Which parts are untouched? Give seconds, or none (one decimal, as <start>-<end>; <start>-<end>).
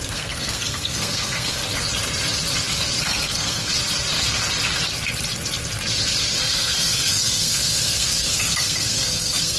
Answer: 1.6-3.0; 3.7-6.4